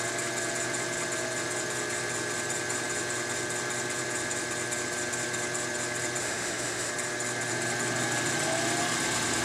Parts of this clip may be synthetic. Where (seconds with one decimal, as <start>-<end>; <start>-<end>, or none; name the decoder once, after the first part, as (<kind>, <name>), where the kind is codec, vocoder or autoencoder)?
6.2-6.9 (autoencoder, DAC-VAE)

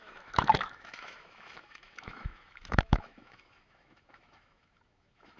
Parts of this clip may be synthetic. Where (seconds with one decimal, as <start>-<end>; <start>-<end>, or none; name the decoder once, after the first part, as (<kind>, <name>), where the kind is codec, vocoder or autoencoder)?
0.0-5.4 (autoencoder, DAC-VAE)

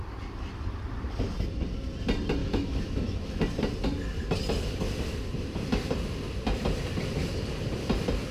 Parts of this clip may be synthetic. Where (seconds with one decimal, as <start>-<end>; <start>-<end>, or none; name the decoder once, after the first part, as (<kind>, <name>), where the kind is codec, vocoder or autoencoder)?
2.4-3.4 (autoencoder, DAC-VAE)

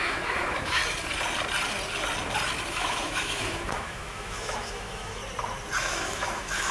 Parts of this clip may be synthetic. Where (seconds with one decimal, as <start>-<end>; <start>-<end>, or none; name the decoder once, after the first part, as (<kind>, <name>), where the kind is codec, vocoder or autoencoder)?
0.0-0.8 (autoencoder, DAC-VAE); 2.7-5.2; 5.8-6.7